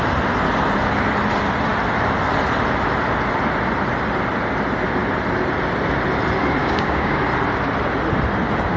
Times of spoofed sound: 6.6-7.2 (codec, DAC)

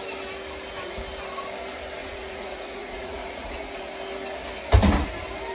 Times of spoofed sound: 2.0-3.8 (vocoder, Vocos)

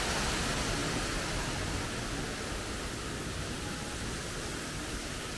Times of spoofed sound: none

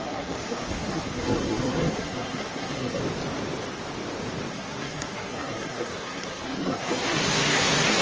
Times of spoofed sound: 0.0-3.0 (codec, SNAC); 4.5-8.0